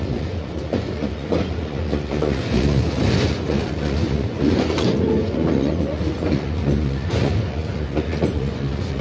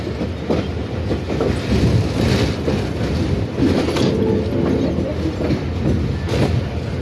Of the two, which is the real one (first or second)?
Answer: second